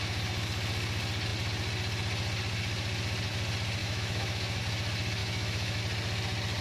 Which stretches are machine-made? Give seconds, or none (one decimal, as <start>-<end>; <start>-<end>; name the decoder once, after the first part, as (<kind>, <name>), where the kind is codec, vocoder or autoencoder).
3.8-4.6 (autoencoder, DAC-VAE); 5.2-5.8